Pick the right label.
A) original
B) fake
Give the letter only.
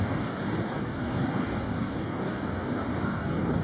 B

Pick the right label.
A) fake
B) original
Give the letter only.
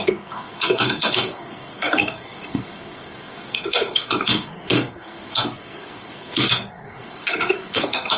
A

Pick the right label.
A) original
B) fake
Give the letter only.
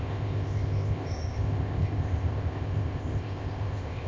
B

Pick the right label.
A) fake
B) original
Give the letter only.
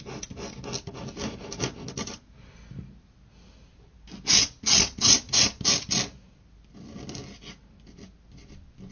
B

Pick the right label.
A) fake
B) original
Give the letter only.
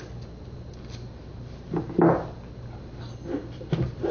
A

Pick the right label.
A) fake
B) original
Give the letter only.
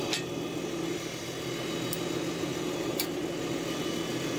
B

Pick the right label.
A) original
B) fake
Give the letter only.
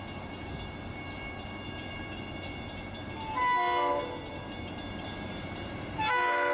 A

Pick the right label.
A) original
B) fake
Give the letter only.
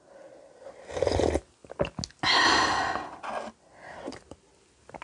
A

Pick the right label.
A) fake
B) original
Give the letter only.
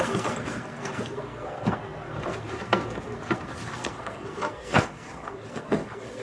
A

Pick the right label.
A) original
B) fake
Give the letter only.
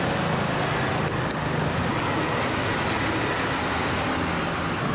A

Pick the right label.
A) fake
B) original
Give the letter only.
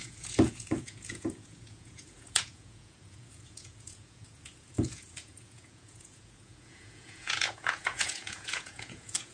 A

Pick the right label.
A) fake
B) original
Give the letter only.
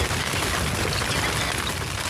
B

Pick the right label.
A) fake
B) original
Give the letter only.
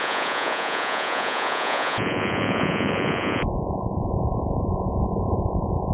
A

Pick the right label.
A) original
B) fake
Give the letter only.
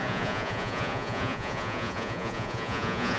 B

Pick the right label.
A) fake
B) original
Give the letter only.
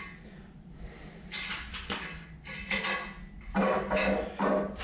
B